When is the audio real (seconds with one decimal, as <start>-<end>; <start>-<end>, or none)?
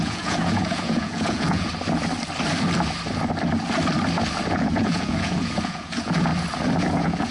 1.7-4.5; 6.3-6.8